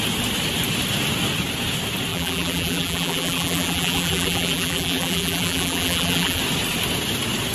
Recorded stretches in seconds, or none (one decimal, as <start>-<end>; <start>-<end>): 0.0-2.1; 6.4-7.5

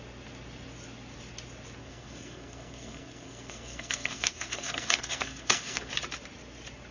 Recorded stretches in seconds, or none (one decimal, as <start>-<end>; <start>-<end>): 0.0-1.8; 5.9-6.9

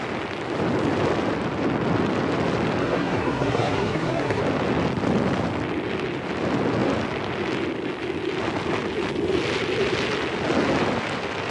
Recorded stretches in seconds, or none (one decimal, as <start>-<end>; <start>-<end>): 0.0-2.8; 4.4-11.5